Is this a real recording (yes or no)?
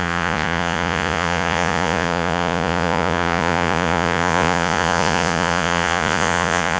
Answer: no